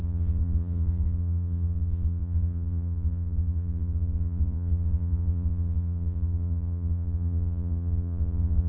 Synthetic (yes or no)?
yes